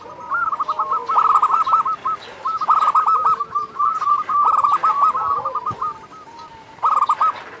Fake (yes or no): no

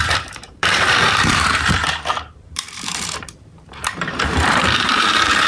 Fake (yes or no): yes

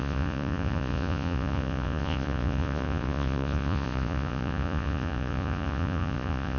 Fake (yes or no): yes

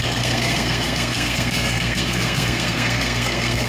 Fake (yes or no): yes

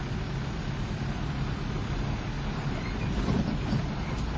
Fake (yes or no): no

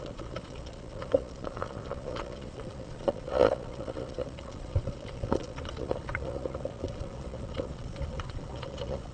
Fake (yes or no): yes